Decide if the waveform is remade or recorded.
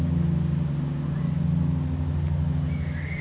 recorded